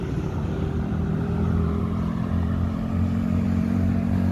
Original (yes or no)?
no